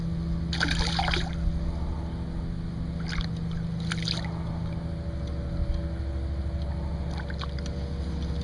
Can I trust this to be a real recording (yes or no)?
yes